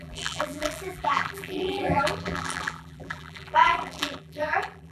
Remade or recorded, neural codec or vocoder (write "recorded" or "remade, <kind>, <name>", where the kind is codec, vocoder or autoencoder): remade, vocoder, BigVGAN v2